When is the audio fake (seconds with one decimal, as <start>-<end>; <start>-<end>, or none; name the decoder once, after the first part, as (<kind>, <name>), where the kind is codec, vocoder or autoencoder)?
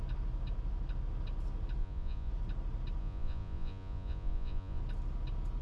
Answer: 1.8-2.3 (vocoder, Vocos); 3.0-4.8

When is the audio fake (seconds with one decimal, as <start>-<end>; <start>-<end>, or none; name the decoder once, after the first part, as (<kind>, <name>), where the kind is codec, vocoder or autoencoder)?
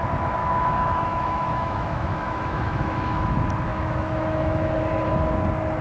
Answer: 0.4-3.2 (autoencoder, DAC-VAE); 3.7-4.7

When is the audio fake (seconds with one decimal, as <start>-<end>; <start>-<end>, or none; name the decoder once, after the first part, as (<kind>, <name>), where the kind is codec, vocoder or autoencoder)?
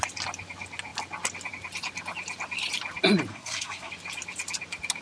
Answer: 3.3-3.9 (codec, SNAC)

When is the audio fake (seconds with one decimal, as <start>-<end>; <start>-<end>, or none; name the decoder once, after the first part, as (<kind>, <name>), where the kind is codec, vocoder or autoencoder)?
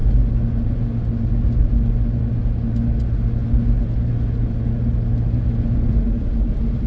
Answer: none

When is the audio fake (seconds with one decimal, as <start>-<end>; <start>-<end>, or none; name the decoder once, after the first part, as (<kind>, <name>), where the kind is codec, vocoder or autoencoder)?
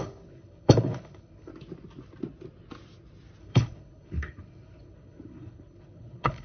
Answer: 0.0-1.5 (codec, HILCodec); 3.4-6.4